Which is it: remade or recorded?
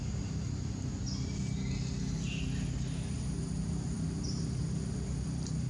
recorded